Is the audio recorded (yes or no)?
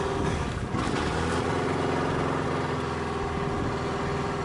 yes